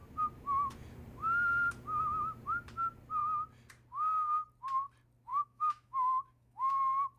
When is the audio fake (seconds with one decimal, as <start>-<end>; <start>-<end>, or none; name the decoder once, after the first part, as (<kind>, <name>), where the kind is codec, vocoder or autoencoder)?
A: 5.3-6.7 (autoencoder, DAC-VAE)